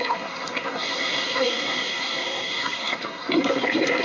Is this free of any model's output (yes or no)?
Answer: no